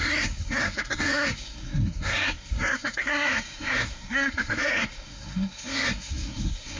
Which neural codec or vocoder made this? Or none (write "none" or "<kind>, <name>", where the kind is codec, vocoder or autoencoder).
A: codec, SNAC